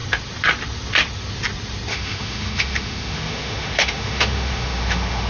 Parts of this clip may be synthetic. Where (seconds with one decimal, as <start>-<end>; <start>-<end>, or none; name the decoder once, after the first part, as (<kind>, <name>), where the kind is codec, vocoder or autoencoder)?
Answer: 1.9-5.3 (autoencoder, DAC-VAE)